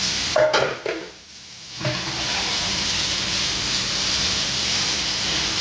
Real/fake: real